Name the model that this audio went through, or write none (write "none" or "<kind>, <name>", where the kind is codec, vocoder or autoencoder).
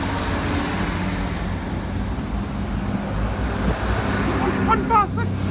none